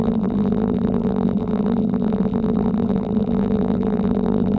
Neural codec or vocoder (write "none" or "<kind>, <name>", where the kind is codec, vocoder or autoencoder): vocoder, BigVGAN v2